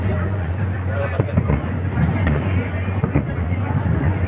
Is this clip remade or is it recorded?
remade